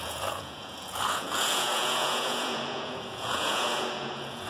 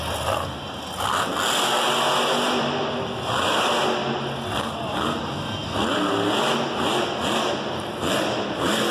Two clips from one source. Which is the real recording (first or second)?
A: second